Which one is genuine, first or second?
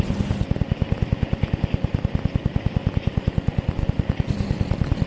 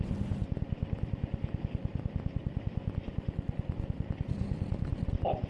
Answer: first